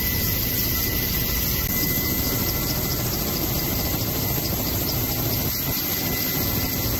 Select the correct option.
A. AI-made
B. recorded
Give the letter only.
B